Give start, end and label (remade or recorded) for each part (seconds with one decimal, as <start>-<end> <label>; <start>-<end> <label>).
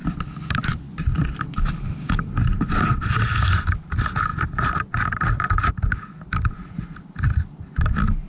0.0-3.9 remade; 3.9-4.3 recorded; 4.3-5.7 remade; 5.7-8.3 recorded